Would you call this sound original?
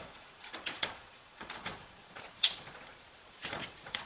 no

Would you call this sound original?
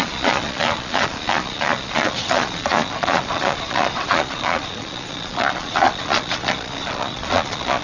no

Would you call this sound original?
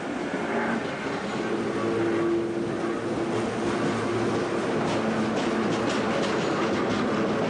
yes